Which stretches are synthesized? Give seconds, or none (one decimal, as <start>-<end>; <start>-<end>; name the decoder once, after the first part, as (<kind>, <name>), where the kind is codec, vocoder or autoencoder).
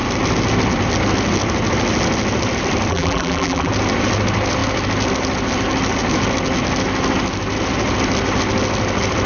2.9-3.7 (vocoder, BigVGAN v2)